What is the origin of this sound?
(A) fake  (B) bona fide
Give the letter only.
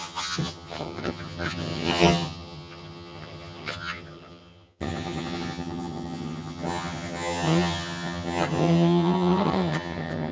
A